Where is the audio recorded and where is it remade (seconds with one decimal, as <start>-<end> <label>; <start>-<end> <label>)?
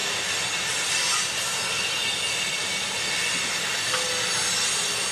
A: 0.0-5.1 recorded